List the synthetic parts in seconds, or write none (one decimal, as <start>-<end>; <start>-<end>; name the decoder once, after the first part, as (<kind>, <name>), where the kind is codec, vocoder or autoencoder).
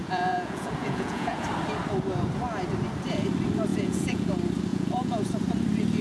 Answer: 0.0-1.4 (vocoder, Vocos); 3.7-4.3; 4.7-5.3